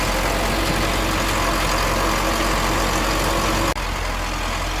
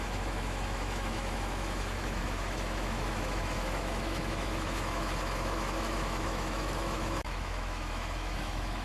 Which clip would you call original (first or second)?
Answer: first